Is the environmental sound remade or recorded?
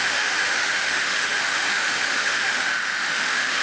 remade